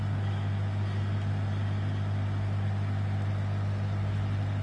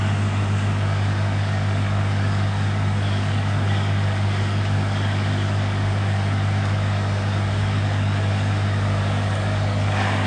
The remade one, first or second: second